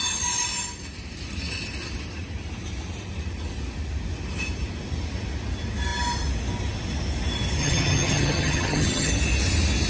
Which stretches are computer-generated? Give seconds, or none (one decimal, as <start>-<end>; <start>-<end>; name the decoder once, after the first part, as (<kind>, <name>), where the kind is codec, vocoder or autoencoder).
7.6-9.1 (vocoder, HiFi-GAN)